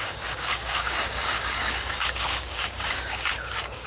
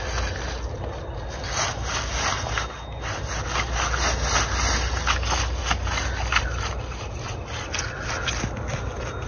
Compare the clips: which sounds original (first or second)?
second